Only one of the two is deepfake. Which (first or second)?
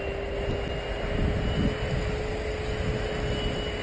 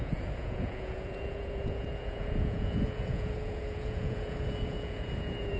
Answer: second